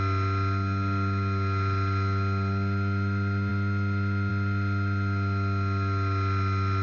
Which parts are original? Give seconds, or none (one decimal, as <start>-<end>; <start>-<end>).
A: 0.0-6.8